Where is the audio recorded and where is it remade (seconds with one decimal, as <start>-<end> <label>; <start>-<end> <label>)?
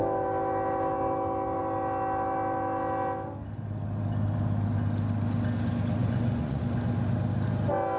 0.0-6.0 recorded; 6.0-6.6 remade; 6.6-8.0 recorded